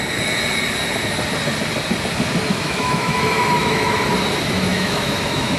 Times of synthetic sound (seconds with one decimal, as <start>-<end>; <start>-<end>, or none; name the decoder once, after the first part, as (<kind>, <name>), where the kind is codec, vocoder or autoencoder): 2.5-3.9 (autoencoder, DAC-VAE); 4.7-5.6